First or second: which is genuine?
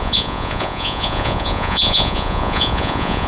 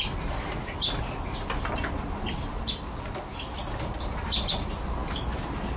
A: second